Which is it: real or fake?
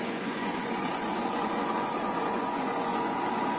fake